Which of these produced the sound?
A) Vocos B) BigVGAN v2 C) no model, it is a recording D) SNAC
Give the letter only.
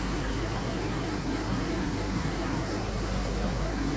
D